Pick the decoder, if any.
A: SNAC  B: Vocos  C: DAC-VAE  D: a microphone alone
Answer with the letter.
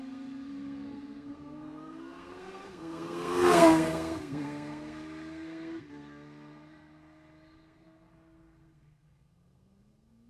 A